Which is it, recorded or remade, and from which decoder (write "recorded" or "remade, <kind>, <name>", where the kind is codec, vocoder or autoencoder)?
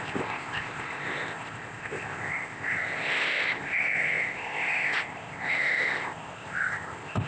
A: remade, codec, ZipCodec